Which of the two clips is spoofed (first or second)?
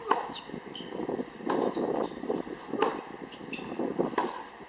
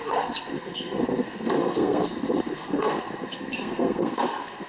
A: second